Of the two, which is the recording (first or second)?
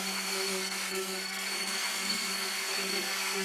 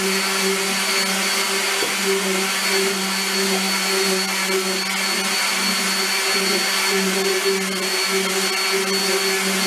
second